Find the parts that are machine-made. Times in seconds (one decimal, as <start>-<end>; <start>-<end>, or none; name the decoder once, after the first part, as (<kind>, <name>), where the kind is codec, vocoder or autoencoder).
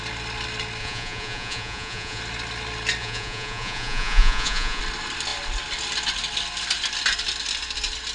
0.8-2.2 (vocoder, Vocos); 3.0-4.8